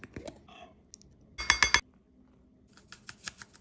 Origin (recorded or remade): recorded